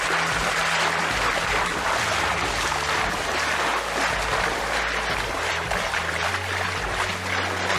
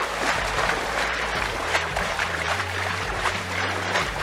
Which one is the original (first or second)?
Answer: first